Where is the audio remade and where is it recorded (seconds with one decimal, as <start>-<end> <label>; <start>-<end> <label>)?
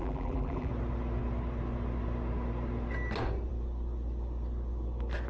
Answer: 0.0-0.7 remade; 0.7-5.3 recorded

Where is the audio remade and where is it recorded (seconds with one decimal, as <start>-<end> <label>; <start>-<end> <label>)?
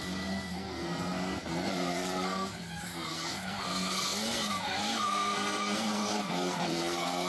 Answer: 0.0-7.3 remade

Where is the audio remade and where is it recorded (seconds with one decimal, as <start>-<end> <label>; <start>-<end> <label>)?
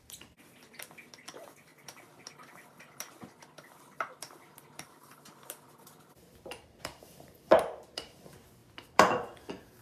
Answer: 0.0-9.8 remade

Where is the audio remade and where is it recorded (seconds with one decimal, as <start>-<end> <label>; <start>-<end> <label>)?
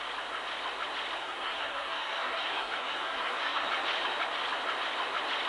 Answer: 0.0-1.2 recorded; 1.2-3.7 remade; 3.7-5.5 recorded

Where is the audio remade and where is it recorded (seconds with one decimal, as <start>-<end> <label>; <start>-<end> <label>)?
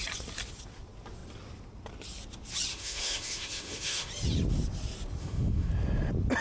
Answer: 0.0-2.7 recorded; 2.7-4.1 remade; 4.1-5.2 recorded; 5.2-5.7 remade; 5.7-6.4 recorded